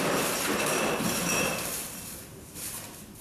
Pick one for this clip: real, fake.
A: fake